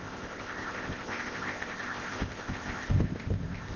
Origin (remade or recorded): remade